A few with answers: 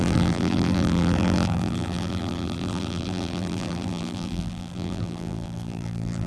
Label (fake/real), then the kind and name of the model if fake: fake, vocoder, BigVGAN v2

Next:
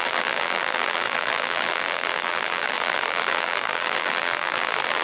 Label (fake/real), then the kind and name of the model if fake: fake, vocoder, BigVGAN v2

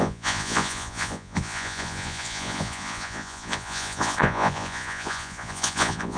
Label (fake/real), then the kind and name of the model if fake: fake, vocoder, Vocos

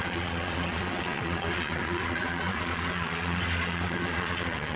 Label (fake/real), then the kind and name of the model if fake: fake, vocoder, Vocos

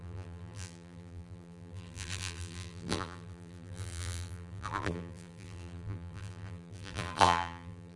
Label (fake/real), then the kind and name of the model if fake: fake, vocoder, BigVGAN v2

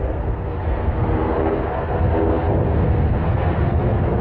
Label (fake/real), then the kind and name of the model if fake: fake, codec, SNAC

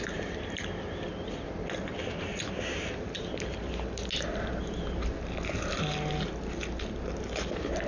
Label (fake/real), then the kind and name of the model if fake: real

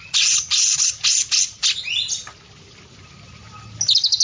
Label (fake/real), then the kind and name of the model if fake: real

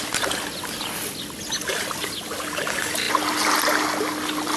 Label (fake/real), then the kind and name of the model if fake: real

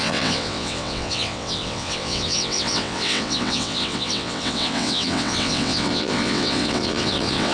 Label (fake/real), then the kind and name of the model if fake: fake, vocoder, WaveNeXt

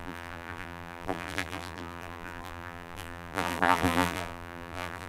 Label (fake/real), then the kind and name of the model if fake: fake, vocoder, BigVGAN v2